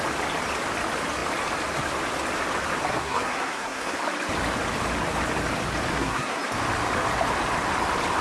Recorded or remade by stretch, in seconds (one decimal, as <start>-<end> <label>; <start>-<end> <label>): 0.0-2.9 recorded; 2.9-4.0 remade; 4.0-5.9 recorded; 5.9-6.4 remade; 6.4-8.2 recorded